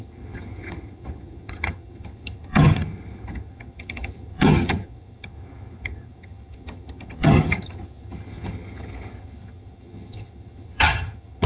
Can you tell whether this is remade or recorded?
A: remade